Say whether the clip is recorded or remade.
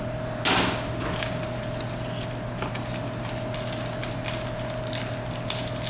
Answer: recorded